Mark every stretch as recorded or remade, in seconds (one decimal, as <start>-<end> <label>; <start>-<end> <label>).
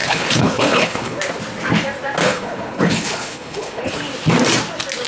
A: 0.0-1.2 remade; 1.2-2.2 recorded; 2.2-3.9 remade; 3.9-5.1 recorded